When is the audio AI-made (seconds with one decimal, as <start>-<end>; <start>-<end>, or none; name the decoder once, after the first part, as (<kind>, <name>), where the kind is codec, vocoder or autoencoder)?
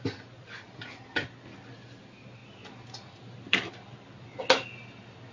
2.4-4.4 (vocoder, BigVGAN v2)